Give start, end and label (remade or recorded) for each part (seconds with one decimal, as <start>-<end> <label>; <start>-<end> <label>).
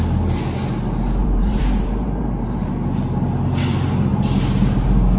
0.0-1.2 recorded; 1.2-2.7 remade; 2.7-4.1 recorded; 4.1-5.2 remade